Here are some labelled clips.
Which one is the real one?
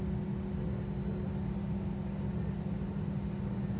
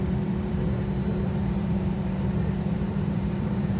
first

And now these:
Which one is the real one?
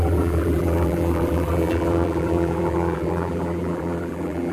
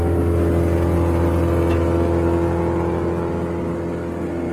second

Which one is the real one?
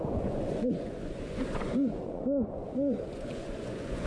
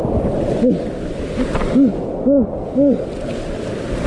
second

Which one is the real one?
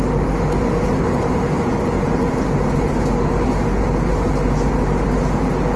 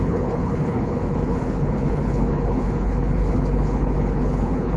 first